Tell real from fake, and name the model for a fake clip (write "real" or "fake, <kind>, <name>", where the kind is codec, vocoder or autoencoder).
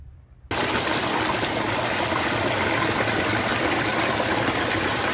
real